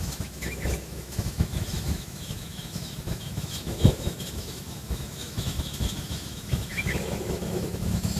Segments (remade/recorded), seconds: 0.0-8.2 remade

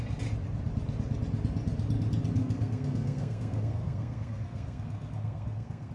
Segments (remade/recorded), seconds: 0.0-2.4 recorded; 2.4-5.9 remade

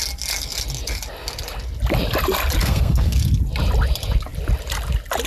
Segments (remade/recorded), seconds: 0.0-2.6 recorded; 2.6-3.2 remade; 3.2-5.3 recorded